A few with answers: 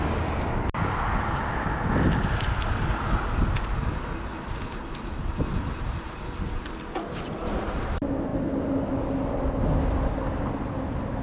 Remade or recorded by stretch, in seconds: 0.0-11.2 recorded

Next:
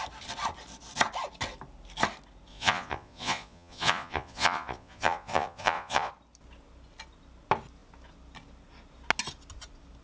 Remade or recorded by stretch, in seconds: 0.0-2.5 recorded; 2.5-6.1 remade; 6.1-10.0 recorded

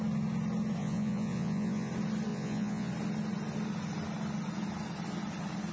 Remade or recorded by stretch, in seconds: 0.0-0.8 recorded; 0.8-1.9 remade; 1.9-2.3 recorded; 2.3-2.9 remade; 2.9-5.7 recorded